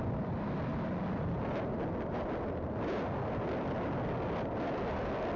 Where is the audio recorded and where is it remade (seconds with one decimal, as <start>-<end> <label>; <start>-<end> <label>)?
0.0-5.4 remade